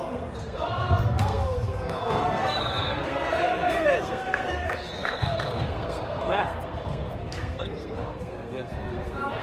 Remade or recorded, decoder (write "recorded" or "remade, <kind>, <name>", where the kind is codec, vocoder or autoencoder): remade, codec, SNAC